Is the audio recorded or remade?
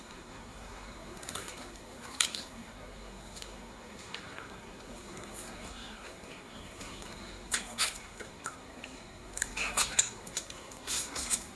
remade